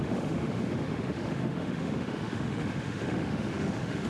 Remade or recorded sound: remade